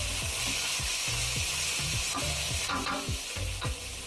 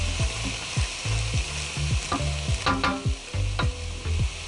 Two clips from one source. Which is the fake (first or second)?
first